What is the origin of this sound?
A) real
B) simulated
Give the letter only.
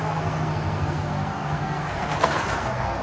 B